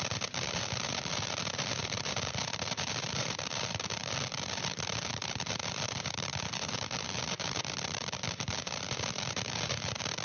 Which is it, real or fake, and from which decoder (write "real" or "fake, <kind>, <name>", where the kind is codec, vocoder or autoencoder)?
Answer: fake, vocoder, BigVGAN v2